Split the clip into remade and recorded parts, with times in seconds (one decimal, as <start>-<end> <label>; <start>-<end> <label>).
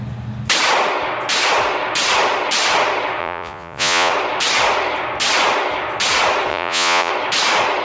0.0-3.2 recorded; 3.2-4.1 remade; 4.1-6.5 recorded; 6.5-7.1 remade; 7.1-7.8 recorded